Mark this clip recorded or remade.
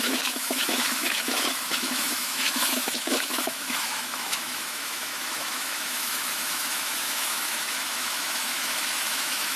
remade